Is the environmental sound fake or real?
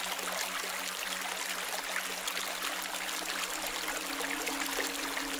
real